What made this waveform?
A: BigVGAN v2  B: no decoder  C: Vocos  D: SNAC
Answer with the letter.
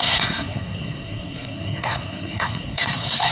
D